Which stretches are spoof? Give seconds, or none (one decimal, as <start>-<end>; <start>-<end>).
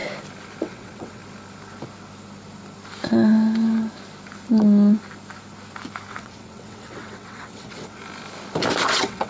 0.6-1.2; 6.1-8.0; 8.9-9.3